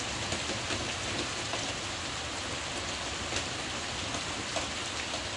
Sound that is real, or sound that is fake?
real